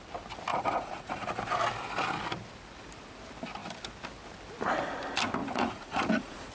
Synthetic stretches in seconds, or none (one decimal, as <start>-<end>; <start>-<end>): 0.5-1.3; 5.4-6.5

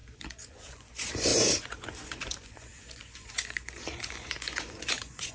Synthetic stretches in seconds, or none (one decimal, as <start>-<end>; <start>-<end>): 0.0-5.3